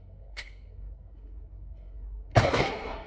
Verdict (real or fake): fake